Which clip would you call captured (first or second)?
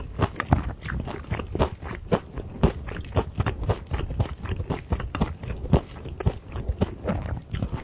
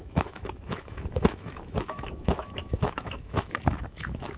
first